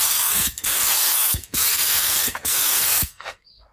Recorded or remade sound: remade